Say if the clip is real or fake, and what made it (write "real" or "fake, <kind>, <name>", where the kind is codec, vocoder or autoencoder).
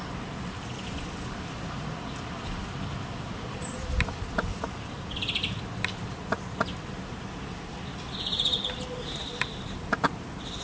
fake, vocoder, BigVGAN v2